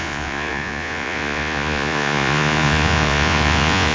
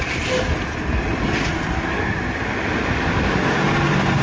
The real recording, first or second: second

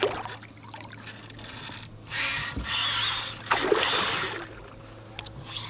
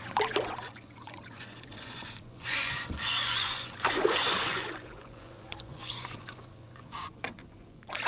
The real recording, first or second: first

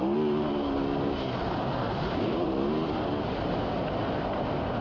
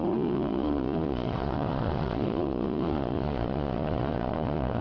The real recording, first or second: first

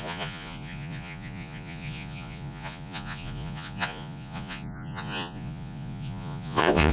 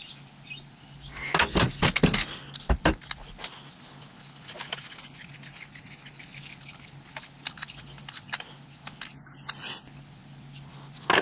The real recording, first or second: second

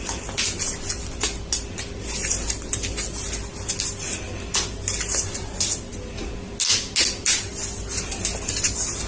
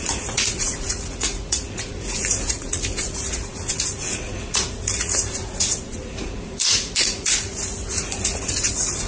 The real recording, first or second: first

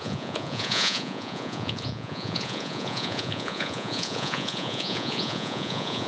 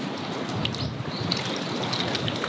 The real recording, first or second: second